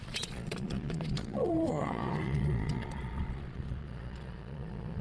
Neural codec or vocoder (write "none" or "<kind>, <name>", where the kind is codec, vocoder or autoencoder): vocoder, Vocos